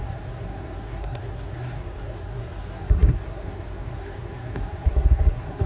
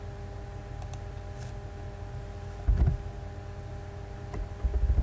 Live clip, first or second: second